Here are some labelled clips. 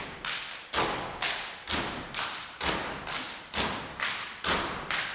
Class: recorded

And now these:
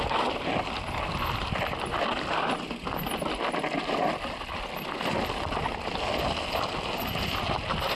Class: recorded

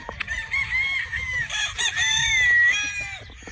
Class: recorded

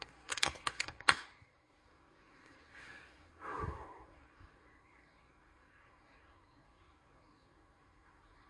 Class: remade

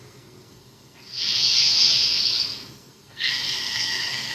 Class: remade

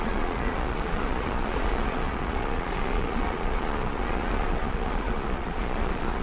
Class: remade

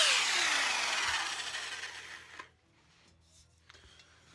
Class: recorded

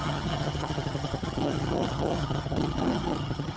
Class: remade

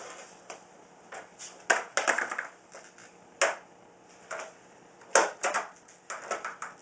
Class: recorded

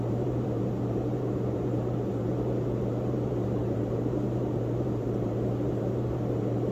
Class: remade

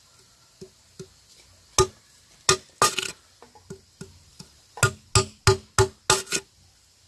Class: recorded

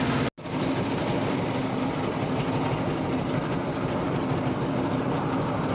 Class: recorded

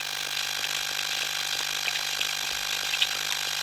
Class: recorded